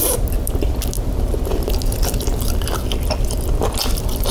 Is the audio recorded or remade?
recorded